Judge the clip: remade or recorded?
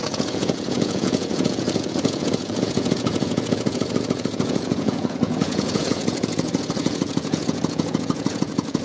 remade